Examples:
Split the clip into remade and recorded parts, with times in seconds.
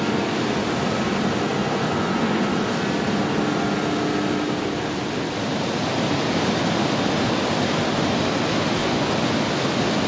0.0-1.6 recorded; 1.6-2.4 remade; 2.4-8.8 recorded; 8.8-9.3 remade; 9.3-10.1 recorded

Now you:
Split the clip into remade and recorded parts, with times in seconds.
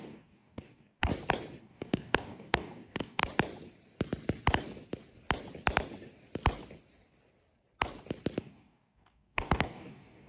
0.0-1.1 remade; 1.1-1.6 recorded; 1.6-3.2 remade; 3.2-8.4 recorded; 8.4-10.3 remade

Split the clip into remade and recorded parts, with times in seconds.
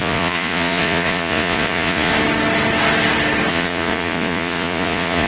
0.0-2.1 remade; 2.1-3.5 recorded; 3.5-5.3 remade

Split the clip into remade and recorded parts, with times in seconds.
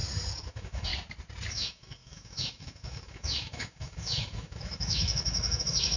0.0-0.5 recorded; 0.5-0.9 remade; 0.9-1.5 recorded; 1.5-6.0 remade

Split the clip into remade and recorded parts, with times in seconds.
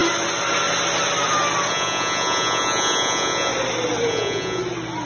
0.0-1.7 recorded; 1.7-3.5 remade; 3.5-4.1 recorded; 4.1-4.6 remade; 4.6-5.1 recorded